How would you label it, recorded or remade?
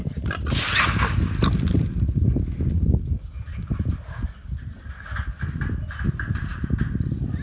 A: recorded